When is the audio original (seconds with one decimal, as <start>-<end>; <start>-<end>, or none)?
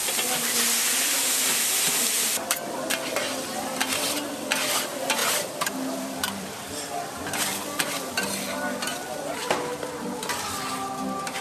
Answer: 0.0-5.2; 8.1-11.4